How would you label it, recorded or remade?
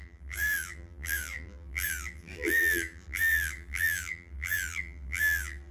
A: remade